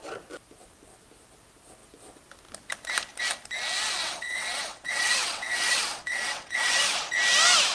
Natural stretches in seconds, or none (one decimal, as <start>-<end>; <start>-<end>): 0.0-4.0; 6.8-7.7